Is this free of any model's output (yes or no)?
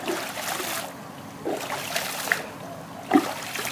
yes